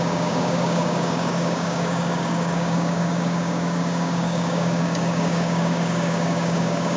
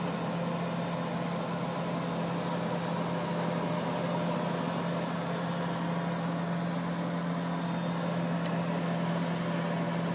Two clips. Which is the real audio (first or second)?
second